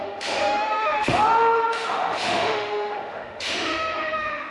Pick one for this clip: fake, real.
fake